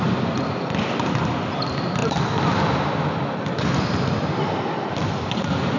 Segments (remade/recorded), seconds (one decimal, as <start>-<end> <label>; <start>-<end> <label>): 0.0-5.8 recorded